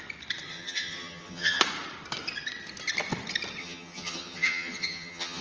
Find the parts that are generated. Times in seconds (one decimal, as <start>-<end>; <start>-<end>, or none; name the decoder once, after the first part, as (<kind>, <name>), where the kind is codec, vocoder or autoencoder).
0.5-1.6 (vocoder, HiFi-GAN); 3.6-5.4